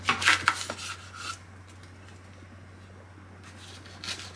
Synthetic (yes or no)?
no